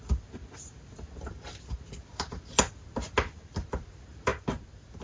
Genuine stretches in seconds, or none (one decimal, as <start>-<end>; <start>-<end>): 0.0-5.0